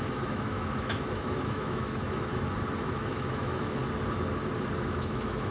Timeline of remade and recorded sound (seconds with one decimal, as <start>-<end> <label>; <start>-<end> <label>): 0.0-2.3 remade; 2.3-2.8 recorded; 2.8-3.8 remade; 3.8-4.8 recorded; 4.8-5.5 remade

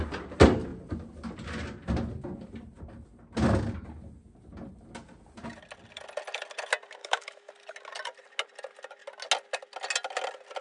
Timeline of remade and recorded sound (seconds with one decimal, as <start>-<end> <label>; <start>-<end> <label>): 0.0-7.0 recorded; 7.0-7.5 remade; 7.5-10.6 recorded